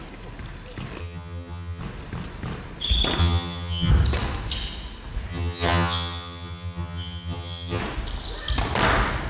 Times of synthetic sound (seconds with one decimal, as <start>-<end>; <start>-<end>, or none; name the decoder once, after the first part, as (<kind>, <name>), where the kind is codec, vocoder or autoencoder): 1.0-1.8 (vocoder, HiFi-GAN); 3.2-3.9; 5.3-7.8